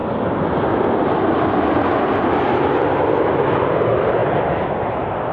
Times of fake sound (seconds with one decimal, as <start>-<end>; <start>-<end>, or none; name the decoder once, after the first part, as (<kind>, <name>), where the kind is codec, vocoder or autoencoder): none